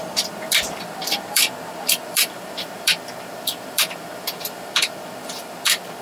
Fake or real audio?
fake